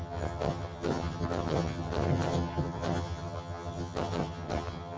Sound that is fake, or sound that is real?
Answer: fake